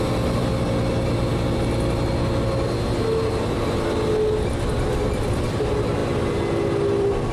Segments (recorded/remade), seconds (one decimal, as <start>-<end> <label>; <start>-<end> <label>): 0.0-7.3 recorded

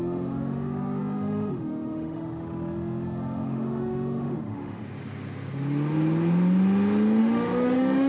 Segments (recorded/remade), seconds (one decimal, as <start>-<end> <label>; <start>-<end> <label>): 0.0-4.8 remade; 4.8-7.2 recorded; 7.2-8.1 remade